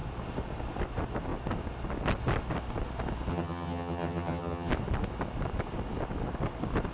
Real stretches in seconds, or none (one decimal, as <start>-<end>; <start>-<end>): 0.0-3.3; 4.7-6.9